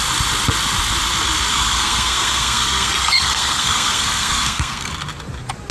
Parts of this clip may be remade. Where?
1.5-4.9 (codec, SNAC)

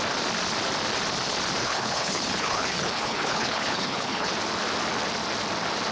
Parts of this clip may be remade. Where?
1.6-4.3 (codec, HILCodec)